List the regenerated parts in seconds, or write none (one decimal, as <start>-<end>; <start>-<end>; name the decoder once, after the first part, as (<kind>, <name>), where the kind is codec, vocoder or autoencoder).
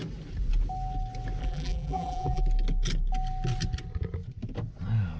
1.4-2.4 (vocoder, BigVGAN v2)